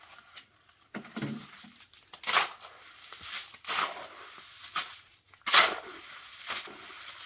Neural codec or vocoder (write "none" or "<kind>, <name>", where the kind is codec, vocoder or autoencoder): none